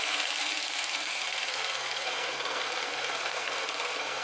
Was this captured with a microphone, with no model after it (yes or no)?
no